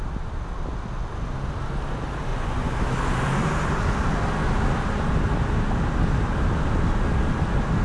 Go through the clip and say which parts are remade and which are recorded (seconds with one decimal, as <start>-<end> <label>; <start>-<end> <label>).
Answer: 0.0-2.3 recorded; 2.3-2.8 remade; 2.8-7.8 recorded